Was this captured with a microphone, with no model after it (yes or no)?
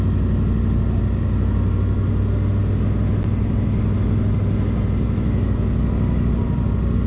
yes